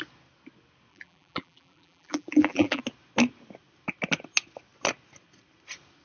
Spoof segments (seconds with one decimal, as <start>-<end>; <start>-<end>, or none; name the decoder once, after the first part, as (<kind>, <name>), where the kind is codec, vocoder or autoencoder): 0.9-2.8 (vocoder, BigVGAN v2)